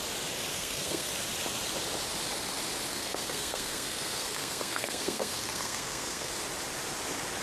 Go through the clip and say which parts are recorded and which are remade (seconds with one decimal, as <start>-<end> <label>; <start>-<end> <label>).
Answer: 0.0-0.5 recorded; 0.5-1.1 remade; 1.1-2.9 recorded; 2.9-6.3 remade; 6.3-7.4 recorded